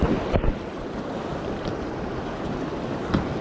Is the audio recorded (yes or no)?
yes